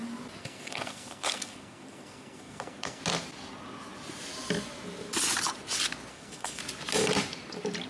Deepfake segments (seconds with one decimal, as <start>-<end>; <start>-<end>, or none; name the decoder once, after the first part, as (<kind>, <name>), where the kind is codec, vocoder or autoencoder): 0.4-3.0 (codec, SNAC); 6.1-6.6